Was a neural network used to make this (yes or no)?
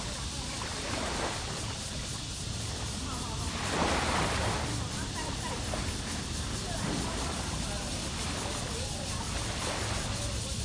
no